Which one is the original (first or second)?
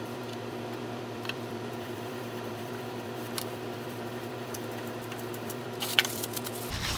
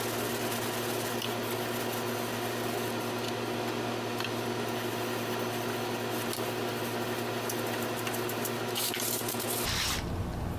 second